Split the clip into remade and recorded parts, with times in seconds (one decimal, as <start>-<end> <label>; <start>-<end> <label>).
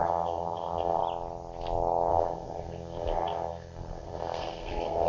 0.0-1.0 remade; 1.0-2.1 recorded; 2.1-5.1 remade